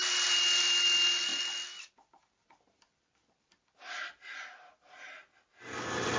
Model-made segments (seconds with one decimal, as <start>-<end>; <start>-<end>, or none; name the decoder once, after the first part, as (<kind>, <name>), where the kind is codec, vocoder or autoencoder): none